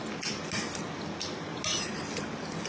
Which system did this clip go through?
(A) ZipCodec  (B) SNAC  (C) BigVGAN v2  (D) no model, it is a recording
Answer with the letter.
D